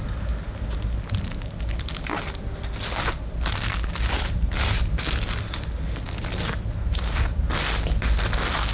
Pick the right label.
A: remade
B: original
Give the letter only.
B